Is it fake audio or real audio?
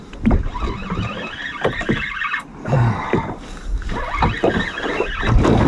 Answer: real